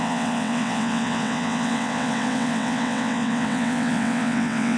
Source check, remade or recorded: remade